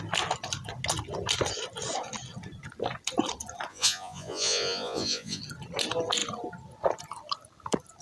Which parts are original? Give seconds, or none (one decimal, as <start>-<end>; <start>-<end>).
0.0-3.7; 5.4-8.0